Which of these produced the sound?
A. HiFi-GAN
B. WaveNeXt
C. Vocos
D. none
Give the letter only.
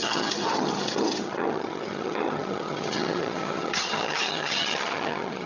A